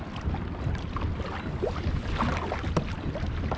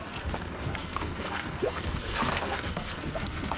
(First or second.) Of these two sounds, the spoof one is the second